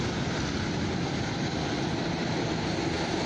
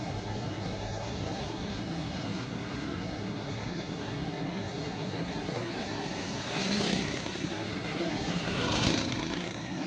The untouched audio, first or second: first